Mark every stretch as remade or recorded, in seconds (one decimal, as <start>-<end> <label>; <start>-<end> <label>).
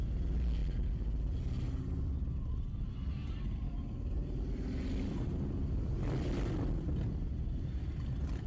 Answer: 0.0-0.6 remade; 0.6-2.4 recorded; 2.4-4.2 remade; 4.2-5.1 recorded; 5.1-8.5 remade